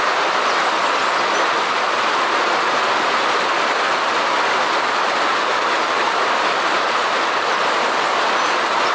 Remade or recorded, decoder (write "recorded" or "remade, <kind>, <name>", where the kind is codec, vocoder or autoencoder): recorded